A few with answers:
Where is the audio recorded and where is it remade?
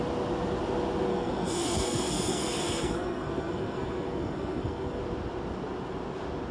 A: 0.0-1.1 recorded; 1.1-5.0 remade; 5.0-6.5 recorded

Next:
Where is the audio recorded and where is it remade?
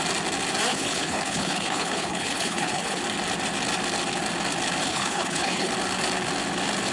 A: 0.0-0.7 recorded; 0.7-3.0 remade; 3.0-4.9 recorded; 4.9-5.7 remade; 5.7-6.9 recorded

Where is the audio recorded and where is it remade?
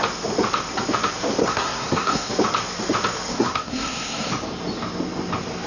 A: 0.0-1.4 recorded; 1.4-2.3 remade; 2.3-3.3 recorded; 3.3-4.3 remade; 4.3-5.7 recorded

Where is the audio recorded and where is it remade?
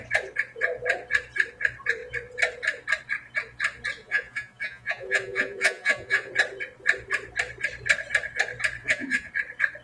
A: 0.0-4.0 recorded; 4.0-6.3 remade; 6.3-8.8 recorded; 8.8-9.3 remade; 9.3-9.8 recorded